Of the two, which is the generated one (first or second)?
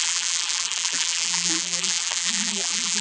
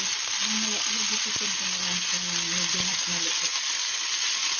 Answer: first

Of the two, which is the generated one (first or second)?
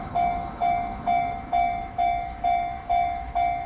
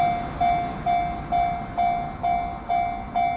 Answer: first